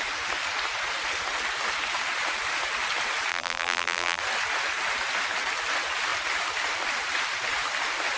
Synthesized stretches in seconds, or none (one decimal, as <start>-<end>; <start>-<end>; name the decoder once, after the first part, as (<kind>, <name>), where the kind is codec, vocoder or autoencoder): 3.3-4.2 (vocoder, BigVGAN v2)